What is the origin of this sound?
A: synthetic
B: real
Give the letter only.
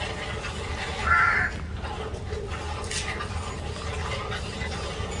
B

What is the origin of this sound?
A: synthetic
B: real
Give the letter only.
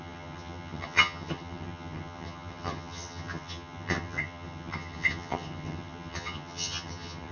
A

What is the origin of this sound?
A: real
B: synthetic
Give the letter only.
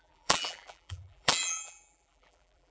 B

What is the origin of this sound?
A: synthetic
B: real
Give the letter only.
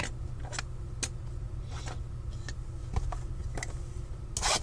B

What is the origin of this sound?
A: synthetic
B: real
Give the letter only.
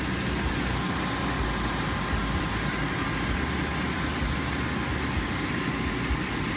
B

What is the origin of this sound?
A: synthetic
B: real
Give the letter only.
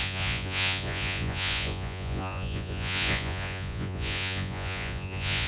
A